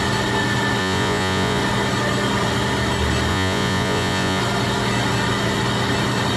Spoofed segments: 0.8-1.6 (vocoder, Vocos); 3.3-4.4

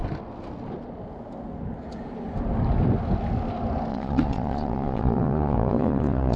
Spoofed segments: 3.9-6.4 (vocoder, Vocos)

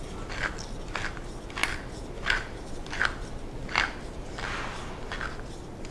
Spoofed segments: none

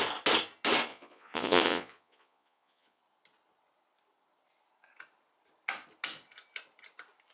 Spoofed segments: 0.9-3.0 (vocoder, Vocos)

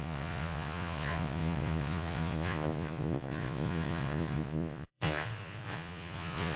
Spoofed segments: 0.0-6.6 (vocoder, Vocos)